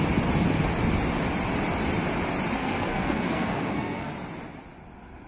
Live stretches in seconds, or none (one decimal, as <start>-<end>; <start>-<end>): 0.0-2.6; 4.1-5.3